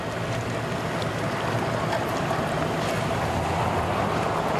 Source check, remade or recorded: recorded